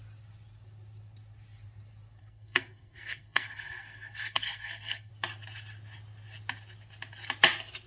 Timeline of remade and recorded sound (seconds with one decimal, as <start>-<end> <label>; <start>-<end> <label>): 0.0-2.2 recorded; 2.2-5.1 remade; 5.1-7.9 recorded

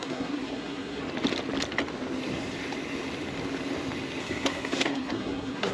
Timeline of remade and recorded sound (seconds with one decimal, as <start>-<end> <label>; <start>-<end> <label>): 0.0-1.0 remade; 1.0-4.2 recorded; 4.2-5.7 remade

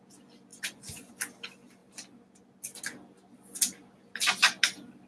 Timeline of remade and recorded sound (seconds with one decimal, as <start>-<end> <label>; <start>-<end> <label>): 0.0-0.5 recorded; 0.5-1.1 remade; 1.1-5.1 recorded

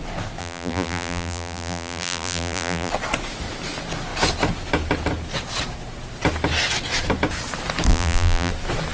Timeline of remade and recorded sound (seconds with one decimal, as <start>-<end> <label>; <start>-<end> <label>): 0.0-0.4 recorded; 0.4-2.9 remade; 2.9-7.9 recorded; 7.9-8.5 remade; 8.5-8.9 recorded